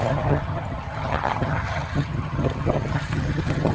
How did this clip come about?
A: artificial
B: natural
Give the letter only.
A